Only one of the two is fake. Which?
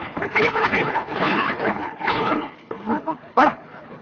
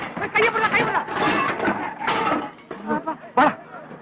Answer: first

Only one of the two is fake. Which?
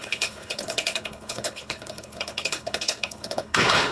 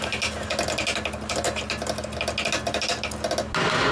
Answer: first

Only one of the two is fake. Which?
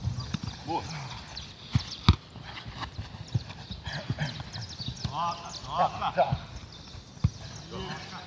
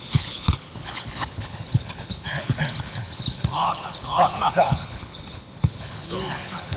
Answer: second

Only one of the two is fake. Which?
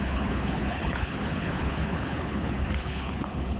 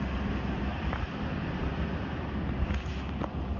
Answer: first